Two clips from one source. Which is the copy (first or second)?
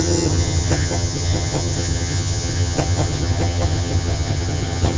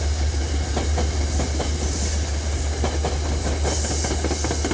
first